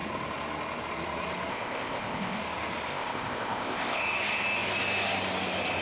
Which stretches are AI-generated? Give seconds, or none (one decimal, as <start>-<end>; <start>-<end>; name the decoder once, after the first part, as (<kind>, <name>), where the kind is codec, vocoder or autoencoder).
1.5-2.4 (codec, ZipCodec); 2.9-4.0